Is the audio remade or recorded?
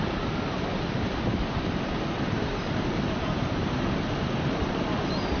remade